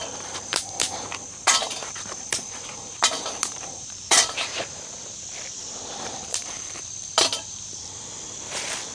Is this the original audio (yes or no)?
no